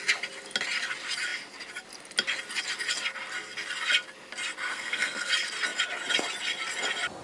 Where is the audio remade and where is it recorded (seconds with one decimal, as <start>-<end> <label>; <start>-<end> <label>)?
0.0-4.7 recorded; 4.7-5.3 remade; 5.3-7.2 recorded